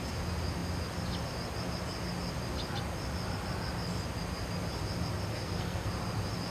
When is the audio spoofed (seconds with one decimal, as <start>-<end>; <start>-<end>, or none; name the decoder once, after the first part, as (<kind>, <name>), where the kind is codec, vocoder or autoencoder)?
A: 5.3-5.9 (codec, SNAC)